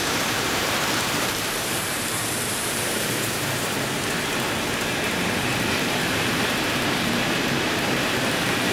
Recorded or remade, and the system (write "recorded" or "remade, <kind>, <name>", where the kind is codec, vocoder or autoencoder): remade, vocoder, BigVGAN v2